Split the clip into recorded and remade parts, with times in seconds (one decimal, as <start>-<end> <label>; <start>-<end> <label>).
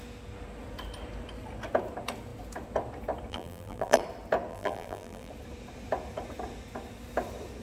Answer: 0.0-3.3 recorded; 3.3-4.0 remade; 4.0-4.5 recorded; 4.5-5.3 remade; 5.3-7.6 recorded